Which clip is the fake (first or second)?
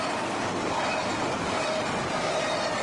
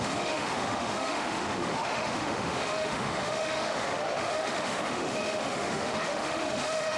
second